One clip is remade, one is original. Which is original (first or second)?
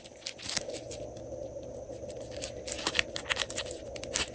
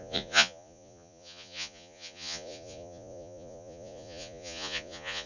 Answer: first